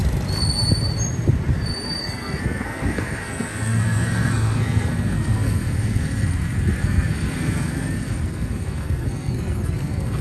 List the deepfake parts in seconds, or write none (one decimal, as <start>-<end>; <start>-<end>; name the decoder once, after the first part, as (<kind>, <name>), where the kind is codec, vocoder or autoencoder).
2.0-10.2 (codec, SNAC)